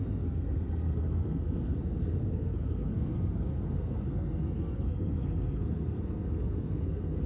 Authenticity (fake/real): fake